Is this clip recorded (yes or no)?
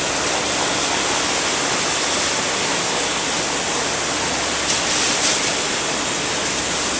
yes